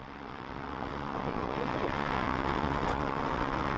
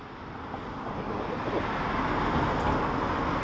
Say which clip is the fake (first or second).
first